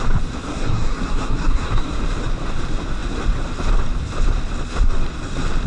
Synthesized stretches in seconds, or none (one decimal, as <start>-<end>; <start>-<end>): 0.5-2.0